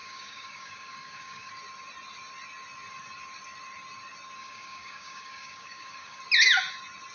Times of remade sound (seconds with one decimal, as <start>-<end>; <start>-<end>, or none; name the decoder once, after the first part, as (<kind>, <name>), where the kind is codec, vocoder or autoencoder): 0.0-1.5 (codec, DAC); 4.4-6.2